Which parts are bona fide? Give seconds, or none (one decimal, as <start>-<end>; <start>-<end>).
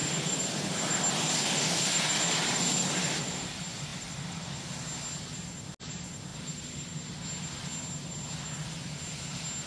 3.2-3.9; 4.8-9.7